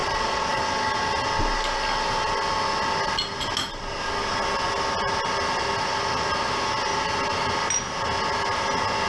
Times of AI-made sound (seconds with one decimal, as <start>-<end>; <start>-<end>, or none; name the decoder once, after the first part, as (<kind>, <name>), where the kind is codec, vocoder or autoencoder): 0.0-0.6 (vocoder, Vocos)